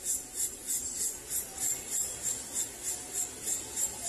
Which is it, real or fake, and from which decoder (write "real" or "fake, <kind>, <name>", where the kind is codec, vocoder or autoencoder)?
real